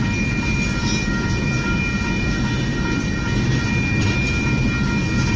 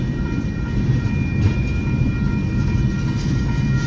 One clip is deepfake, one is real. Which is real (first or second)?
first